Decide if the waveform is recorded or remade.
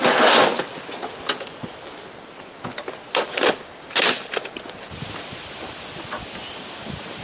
recorded